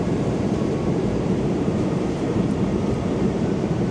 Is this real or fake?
fake